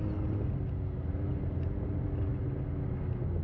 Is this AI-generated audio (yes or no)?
no